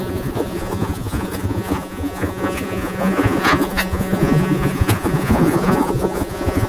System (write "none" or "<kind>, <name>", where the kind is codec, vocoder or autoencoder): vocoder, Vocos